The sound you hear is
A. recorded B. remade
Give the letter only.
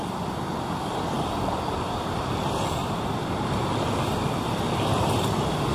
B